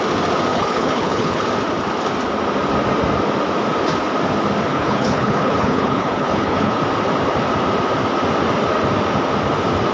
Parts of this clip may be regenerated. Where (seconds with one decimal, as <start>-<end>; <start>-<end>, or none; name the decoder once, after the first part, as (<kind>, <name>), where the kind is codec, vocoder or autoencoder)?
0.5-1.5 (codec, HILCodec); 4.7-6.8